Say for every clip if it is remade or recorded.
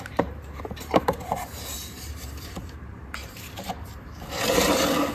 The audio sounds remade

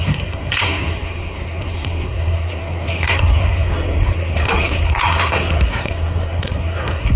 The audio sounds remade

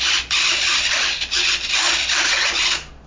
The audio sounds recorded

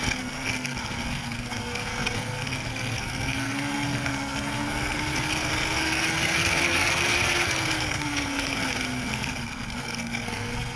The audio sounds remade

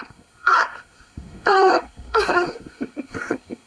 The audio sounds remade